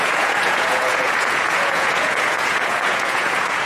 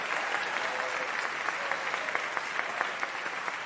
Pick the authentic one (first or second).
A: second